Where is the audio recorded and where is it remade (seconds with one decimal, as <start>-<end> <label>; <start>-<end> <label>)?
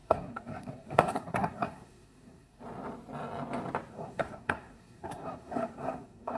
0.0-2.6 remade; 2.6-3.9 recorded; 3.9-6.4 remade